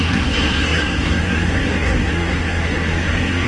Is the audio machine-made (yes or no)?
yes